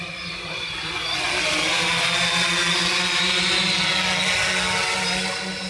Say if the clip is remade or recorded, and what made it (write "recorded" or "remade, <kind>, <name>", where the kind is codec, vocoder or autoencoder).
recorded